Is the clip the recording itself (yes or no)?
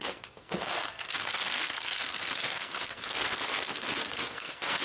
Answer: no